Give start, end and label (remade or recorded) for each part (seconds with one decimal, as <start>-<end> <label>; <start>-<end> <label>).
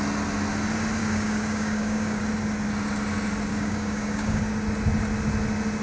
0.0-1.0 recorded; 1.0-2.2 remade; 2.2-3.5 recorded; 3.5-4.4 remade; 4.4-5.8 recorded